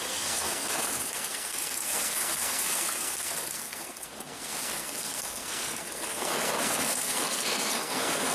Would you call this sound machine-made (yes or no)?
yes